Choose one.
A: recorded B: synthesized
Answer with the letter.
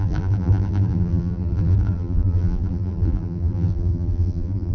B